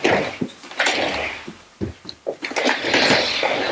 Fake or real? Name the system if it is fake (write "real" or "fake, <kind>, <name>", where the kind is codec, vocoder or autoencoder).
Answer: real